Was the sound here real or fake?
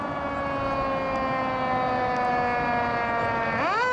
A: real